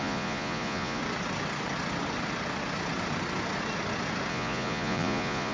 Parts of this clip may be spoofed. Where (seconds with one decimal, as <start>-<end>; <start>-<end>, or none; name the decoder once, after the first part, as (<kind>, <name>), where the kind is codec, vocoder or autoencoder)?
0.0-1.0 (vocoder, Vocos); 4.3-5.5